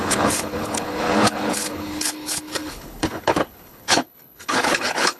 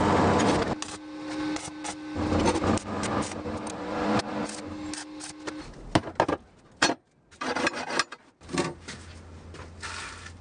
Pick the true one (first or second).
second